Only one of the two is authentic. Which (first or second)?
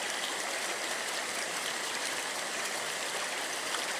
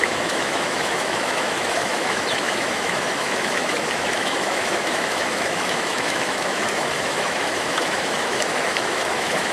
first